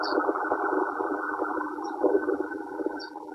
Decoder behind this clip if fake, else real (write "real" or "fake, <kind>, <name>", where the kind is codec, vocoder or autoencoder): fake, vocoder, BigVGAN v2